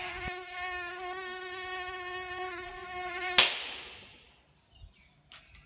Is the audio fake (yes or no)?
no